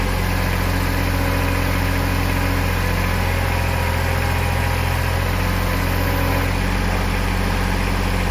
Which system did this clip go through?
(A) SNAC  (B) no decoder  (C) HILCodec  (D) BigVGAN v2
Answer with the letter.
B